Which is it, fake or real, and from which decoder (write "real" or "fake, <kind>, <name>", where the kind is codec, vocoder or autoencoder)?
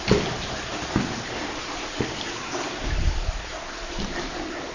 real